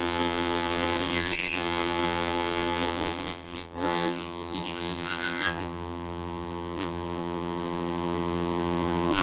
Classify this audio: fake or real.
fake